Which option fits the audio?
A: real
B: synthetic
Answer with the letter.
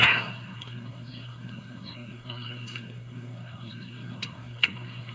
B